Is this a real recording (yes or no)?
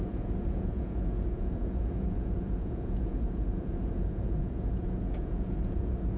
no